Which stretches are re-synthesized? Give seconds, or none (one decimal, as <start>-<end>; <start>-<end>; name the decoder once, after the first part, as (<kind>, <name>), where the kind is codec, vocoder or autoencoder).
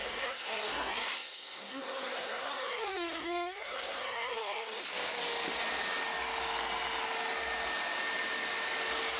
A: 0.0-4.8 (codec, SNAC)